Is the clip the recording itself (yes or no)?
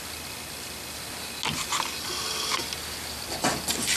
yes